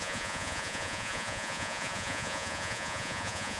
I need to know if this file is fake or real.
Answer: fake